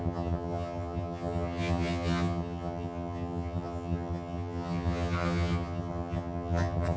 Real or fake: fake